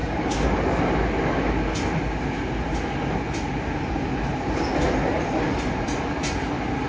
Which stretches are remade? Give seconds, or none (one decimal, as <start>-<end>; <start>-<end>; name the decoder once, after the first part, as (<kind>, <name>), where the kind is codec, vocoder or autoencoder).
0.0-0.8 (codec, DAC)